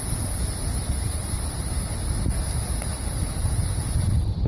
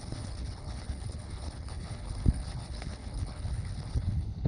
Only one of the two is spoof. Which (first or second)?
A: second